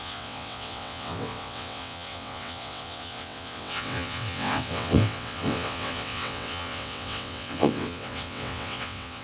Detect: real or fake fake